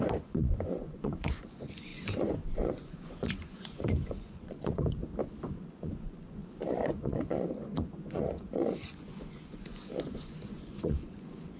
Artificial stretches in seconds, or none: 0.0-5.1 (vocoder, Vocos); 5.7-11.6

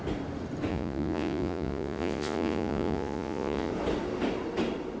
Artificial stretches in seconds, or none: 0.7-3.7 (vocoder, Vocos)

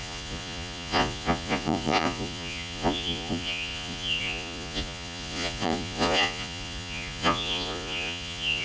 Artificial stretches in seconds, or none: 0.0-8.6 (vocoder, Vocos)

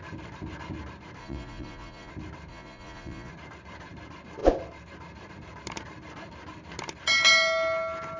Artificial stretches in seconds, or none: 1.2-2.1 (vocoder, Vocos); 2.5-3.3

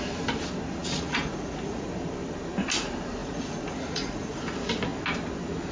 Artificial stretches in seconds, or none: 0.8-1.9 (vocoder, Vocos); 3.2-4.4